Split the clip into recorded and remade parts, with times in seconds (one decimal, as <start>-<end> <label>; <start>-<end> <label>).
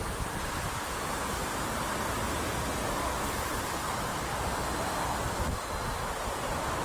0.0-4.1 recorded; 4.1-5.1 remade; 5.1-6.8 recorded